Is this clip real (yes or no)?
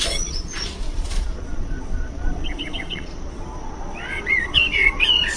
no